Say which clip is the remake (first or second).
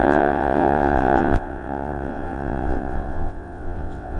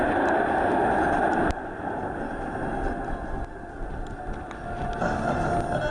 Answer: first